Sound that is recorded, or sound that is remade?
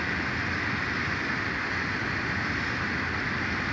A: recorded